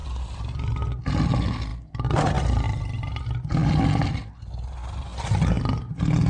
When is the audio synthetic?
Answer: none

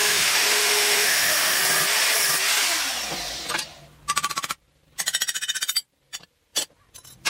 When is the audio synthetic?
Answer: 0.0-1.6 (autoencoder, DAC-VAE)

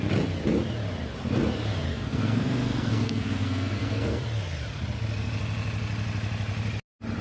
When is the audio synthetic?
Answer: 1.9-4.2 (codec, SNAC)

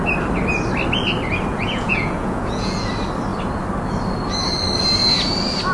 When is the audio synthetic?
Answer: 1.5-2.9 (vocoder, Vocos)